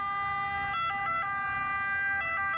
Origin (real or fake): real